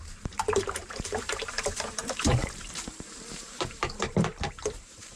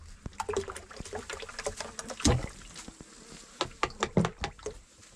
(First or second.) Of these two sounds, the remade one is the first